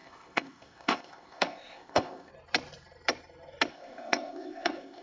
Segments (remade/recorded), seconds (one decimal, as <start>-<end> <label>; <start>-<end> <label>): 0.0-2.3 remade; 2.3-3.7 recorded; 3.7-5.0 remade